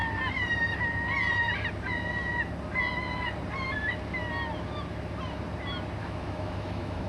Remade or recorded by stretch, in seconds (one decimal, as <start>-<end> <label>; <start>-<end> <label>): 0.0-6.0 recorded; 6.0-7.1 remade